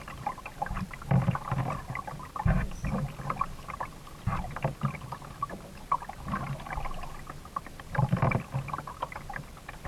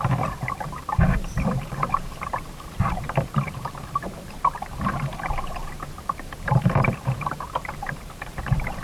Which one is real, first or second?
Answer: first